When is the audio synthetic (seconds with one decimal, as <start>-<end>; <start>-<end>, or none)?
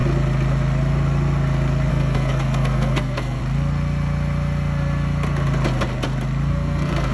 1.9-3.4; 6.5-7.1